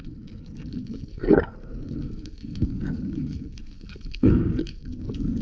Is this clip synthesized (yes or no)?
yes